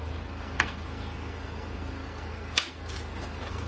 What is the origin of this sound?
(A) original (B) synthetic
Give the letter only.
B